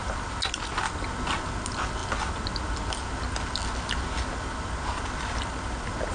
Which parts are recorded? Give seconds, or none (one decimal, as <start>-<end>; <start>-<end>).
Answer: 0.0-6.1